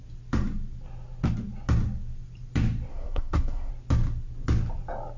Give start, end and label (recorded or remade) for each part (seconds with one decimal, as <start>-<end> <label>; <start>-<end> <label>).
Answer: 0.0-2.9 recorded; 2.9-3.7 remade; 3.7-5.2 recorded